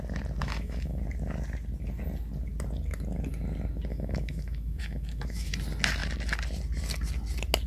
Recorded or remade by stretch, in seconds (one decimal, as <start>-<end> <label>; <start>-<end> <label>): 0.0-0.4 recorded; 0.4-1.0 remade; 1.0-3.9 recorded; 3.9-5.5 remade; 5.5-7.7 recorded